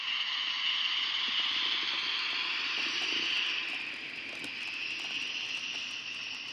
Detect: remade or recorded recorded